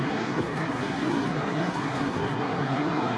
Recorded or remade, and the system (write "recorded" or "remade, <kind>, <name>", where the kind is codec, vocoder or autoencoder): remade, codec, SNAC